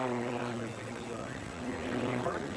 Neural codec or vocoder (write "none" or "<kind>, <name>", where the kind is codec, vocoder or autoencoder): vocoder, WaveNeXt